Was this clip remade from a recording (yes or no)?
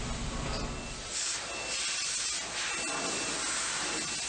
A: no